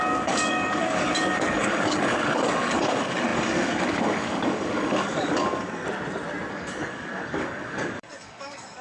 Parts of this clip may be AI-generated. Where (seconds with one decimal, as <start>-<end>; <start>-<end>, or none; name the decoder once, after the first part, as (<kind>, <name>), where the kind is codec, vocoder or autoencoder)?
0.0-5.8 (codec, DAC); 6.5-8.8